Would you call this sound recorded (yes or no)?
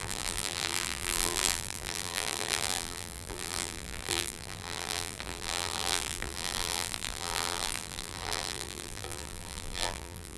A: no